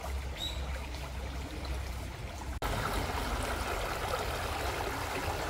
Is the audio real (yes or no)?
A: yes